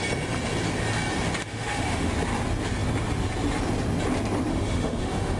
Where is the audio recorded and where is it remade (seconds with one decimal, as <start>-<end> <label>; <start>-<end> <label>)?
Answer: 0.0-1.4 recorded; 1.4-2.1 remade; 2.1-4.5 recorded; 4.5-5.4 remade